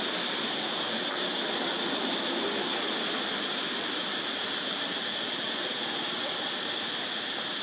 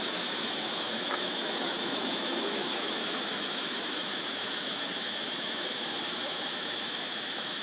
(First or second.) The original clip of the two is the first